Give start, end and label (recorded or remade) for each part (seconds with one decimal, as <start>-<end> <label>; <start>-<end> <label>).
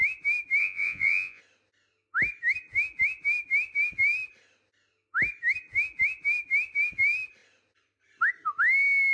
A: 0.0-0.6 recorded; 0.6-1.4 remade; 1.4-9.1 recorded